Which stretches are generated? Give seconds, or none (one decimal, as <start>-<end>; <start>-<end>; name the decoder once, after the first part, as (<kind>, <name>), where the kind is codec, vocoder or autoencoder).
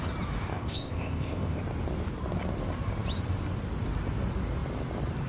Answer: 0.5-1.6 (codec, ZipCodec)